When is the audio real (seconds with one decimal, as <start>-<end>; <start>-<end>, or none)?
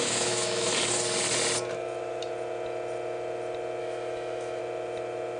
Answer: 0.7-3.8; 4.6-5.4